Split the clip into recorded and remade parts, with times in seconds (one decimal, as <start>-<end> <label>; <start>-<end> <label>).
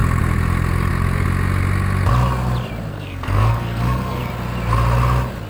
0.0-2.9 recorded; 2.9-4.3 remade; 4.3-5.5 recorded